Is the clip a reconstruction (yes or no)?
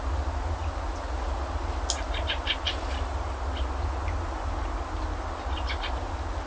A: no